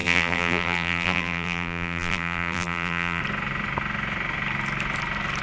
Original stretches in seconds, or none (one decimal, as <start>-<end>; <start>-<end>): 3.2-5.4